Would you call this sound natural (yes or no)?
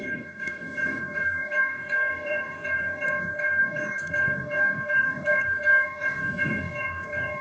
no